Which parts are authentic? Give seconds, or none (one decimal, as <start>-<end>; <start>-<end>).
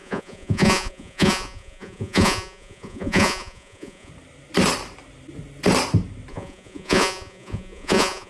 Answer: 4.1-6.3